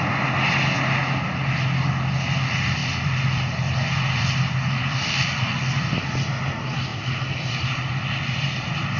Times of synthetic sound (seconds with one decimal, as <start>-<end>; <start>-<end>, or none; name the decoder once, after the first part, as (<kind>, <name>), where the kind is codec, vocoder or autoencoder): 2.8-4.3 (vocoder, BigVGAN v2); 6.9-7.9